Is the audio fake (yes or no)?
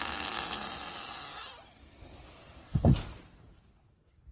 no